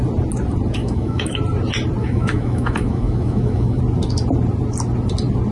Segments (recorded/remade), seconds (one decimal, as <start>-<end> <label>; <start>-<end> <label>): 0.0-0.8 recorded; 0.8-1.4 remade; 1.4-2.0 recorded; 2.0-3.8 remade; 3.8-5.5 recorded